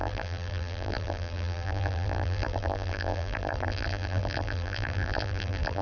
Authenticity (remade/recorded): remade